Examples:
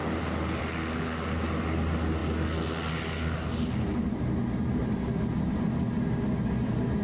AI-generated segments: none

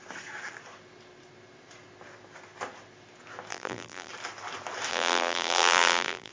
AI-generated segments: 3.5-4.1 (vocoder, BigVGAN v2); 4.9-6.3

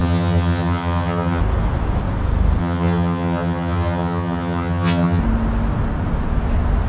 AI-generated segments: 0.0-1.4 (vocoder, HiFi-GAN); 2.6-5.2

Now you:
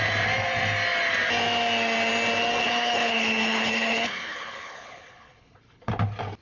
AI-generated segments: 2.6-5.9 (codec, HILCodec)

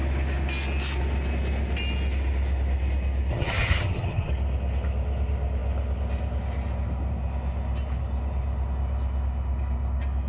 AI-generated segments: 3.3-4.3 (vocoder, HiFi-GAN)